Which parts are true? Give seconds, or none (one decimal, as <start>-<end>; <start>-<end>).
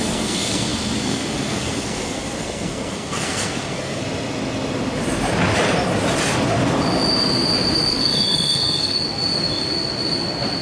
4.0-7.9; 9.0-10.6